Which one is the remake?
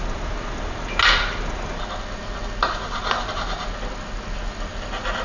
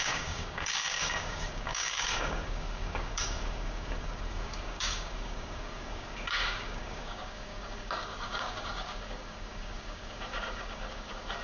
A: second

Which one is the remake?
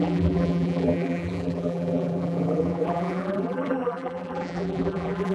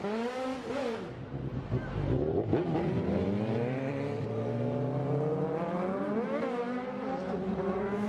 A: first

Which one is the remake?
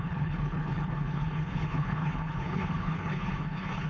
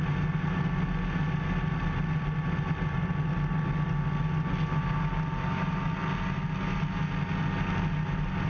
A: first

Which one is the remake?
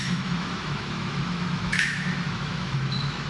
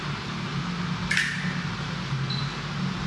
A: first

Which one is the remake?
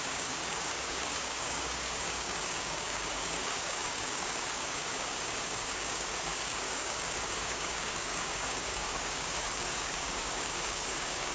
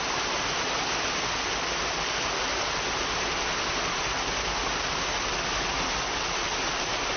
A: first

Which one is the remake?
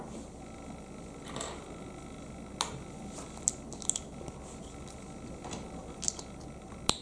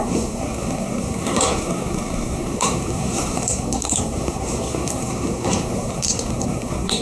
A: second